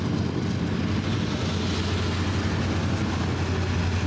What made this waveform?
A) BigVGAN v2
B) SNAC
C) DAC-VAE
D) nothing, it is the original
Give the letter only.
D